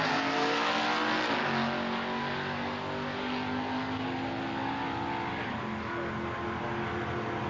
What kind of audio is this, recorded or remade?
recorded